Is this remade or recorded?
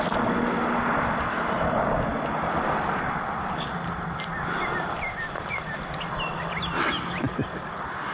recorded